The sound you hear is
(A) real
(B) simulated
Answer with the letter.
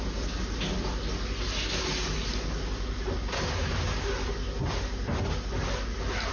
A